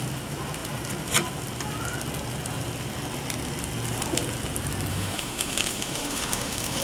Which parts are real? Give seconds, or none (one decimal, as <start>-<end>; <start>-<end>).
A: 0.0-4.9